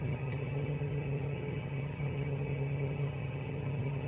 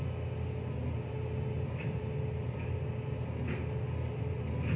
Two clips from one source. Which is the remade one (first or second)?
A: first